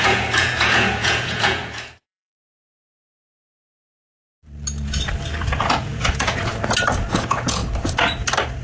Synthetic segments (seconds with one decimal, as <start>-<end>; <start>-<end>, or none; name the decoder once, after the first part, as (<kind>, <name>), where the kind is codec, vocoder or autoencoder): 0.0-2.8 (vocoder, Vocos); 5.6-6.5; 7.1-7.6